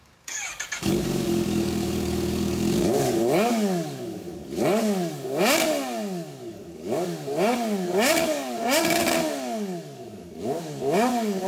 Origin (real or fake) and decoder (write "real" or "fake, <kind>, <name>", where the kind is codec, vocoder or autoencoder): fake, codec, DAC